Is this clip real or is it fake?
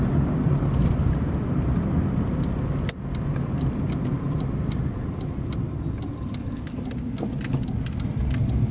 real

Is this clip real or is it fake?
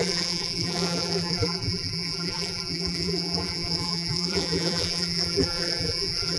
fake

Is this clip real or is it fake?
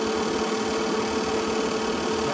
real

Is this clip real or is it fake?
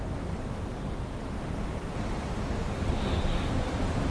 real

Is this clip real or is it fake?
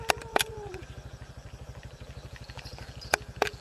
fake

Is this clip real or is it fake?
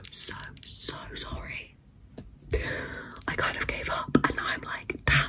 real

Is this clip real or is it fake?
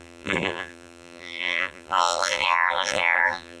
fake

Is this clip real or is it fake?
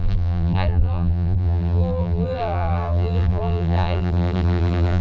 fake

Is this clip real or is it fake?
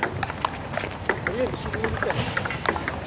real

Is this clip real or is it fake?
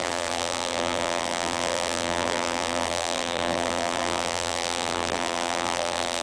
fake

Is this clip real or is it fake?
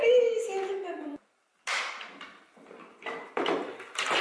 real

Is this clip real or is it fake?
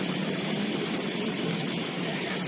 fake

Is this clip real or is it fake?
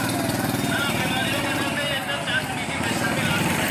real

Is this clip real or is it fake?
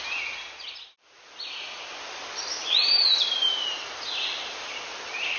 real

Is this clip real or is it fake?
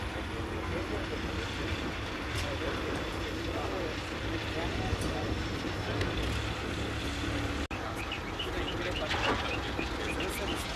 real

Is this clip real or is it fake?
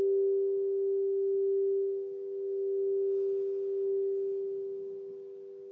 real